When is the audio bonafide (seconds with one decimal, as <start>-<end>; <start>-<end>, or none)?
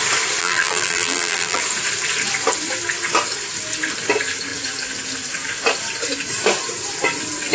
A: 0.0-0.4; 1.6-7.5